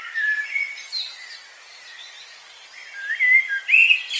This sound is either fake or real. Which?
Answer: real